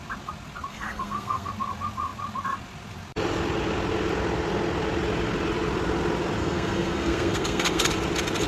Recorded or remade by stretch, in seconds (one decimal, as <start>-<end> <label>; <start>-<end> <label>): 0.0-0.7 recorded; 0.7-1.5 remade; 1.5-6.4 recorded; 6.4-7.9 remade; 7.9-8.5 recorded